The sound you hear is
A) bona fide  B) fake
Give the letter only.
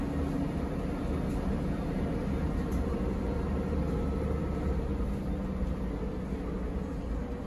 A